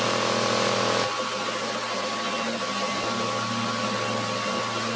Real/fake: real